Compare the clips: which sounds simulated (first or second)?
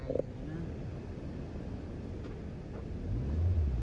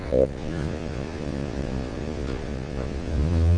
second